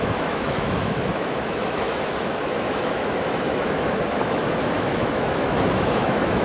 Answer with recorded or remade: remade